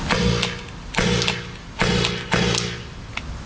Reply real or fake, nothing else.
real